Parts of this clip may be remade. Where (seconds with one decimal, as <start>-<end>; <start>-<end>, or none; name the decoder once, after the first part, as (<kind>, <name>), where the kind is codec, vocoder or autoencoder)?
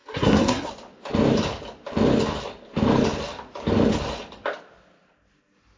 0.0-0.7 (codec, SNAC)